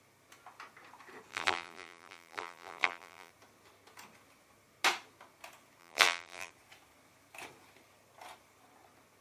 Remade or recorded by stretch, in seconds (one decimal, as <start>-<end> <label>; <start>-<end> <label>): 0.0-1.3 recorded; 1.3-3.3 remade; 3.3-5.8 recorded; 5.8-6.5 remade; 6.5-9.2 recorded